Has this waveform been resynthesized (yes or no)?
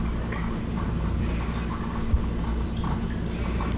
no